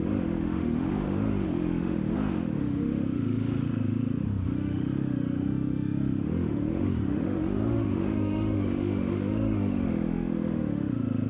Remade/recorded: remade